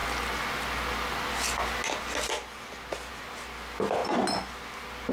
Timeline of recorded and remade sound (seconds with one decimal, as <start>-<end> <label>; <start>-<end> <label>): 0.0-5.1 recorded